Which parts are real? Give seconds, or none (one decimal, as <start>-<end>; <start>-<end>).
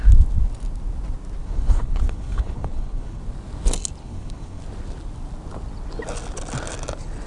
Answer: 0.0-1.4; 3.2-4.0; 4.6-7.3